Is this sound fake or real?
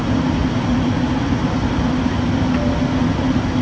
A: real